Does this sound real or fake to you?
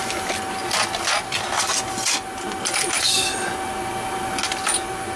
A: real